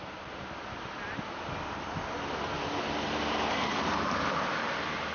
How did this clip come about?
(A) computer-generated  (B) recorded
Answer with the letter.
B